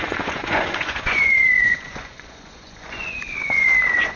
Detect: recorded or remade remade